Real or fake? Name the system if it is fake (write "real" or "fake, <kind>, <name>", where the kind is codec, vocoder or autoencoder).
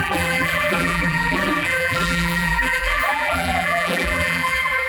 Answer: fake, vocoder, BigVGAN v2